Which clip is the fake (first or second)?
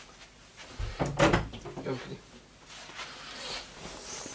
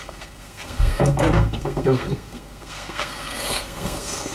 second